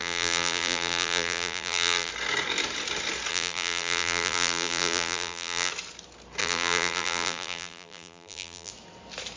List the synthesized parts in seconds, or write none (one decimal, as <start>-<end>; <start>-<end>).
0.0-2.1; 3.3-5.7; 6.4-8.7